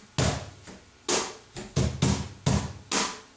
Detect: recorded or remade recorded